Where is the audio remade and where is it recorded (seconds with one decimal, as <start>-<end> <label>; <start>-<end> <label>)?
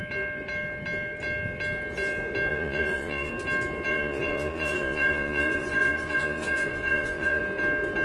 0.0-2.5 recorded; 2.5-3.3 remade; 3.3-3.9 recorded; 3.9-7.4 remade; 7.4-8.0 recorded